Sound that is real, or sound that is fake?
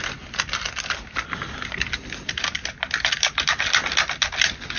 real